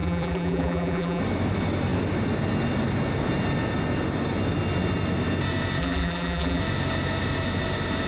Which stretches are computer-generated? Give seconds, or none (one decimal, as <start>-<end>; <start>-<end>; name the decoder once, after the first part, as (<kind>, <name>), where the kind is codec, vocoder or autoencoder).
0.0-1.2 (vocoder, BigVGAN v2); 5.8-6.6